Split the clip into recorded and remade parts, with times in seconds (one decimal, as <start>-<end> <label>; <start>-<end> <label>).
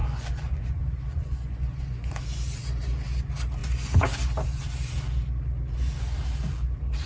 0.0-2.2 remade; 2.2-7.1 recorded